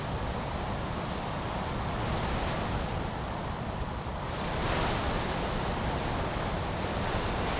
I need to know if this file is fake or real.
real